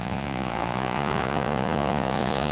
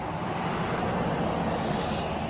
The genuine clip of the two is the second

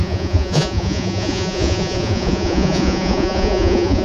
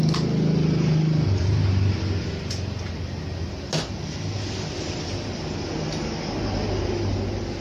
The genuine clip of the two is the second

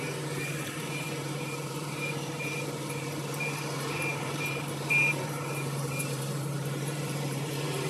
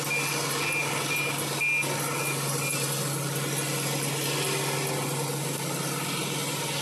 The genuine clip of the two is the second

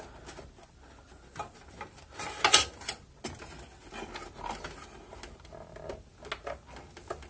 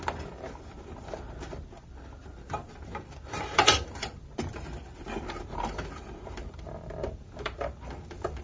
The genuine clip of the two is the first